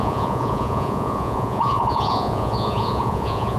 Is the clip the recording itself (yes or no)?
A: no